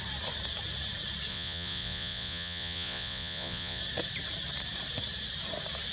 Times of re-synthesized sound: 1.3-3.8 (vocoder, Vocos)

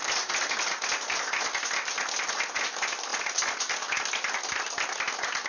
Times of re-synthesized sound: none

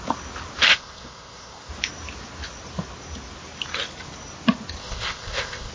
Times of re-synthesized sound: 0.7-1.7 (codec, ZipCodec); 4.8-5.7

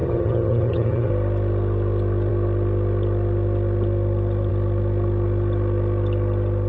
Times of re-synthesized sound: 0.0-1.1 (vocoder, HiFi-GAN)

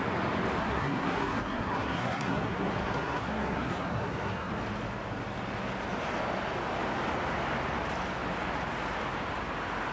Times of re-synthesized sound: 0.6-4.5 (codec, SNAC)